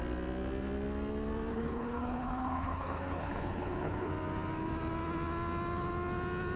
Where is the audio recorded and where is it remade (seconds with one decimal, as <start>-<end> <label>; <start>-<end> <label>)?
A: 0.0-1.5 recorded; 1.5-4.1 remade; 4.1-6.6 recorded